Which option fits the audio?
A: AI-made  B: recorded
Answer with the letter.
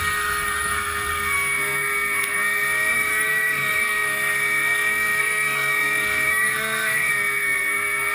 A